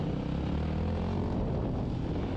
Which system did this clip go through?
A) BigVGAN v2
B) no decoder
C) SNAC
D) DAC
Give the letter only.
B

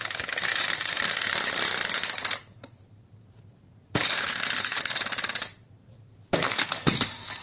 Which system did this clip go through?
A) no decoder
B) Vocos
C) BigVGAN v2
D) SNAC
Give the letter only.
C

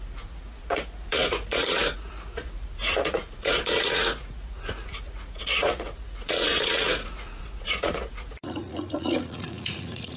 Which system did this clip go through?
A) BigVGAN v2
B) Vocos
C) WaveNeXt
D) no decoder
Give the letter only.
B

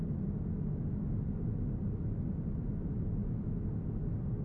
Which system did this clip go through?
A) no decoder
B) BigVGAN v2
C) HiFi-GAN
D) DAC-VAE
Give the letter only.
A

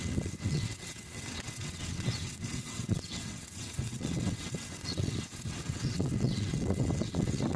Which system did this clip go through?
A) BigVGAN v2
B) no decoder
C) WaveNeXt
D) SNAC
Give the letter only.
C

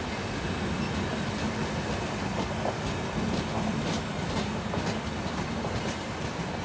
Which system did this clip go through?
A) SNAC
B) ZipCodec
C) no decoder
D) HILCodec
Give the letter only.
C